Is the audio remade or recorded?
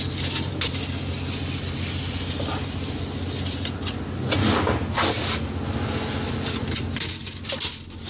recorded